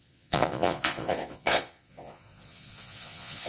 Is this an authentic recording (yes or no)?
no